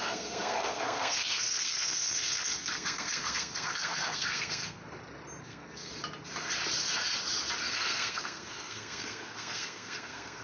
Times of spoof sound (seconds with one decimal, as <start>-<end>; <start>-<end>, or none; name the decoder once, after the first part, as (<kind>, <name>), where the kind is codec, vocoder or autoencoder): 0.0-4.8 (codec, SNAC); 5.4-5.9; 7.7-10.4